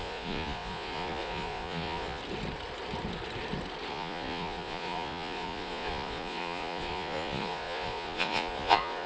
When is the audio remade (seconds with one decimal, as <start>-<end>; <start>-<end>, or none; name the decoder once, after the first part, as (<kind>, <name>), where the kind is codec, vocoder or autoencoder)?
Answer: 0.0-2.2 (vocoder, Vocos); 3.9-9.1